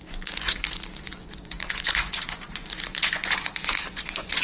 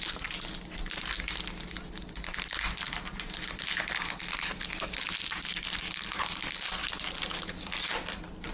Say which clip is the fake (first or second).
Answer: first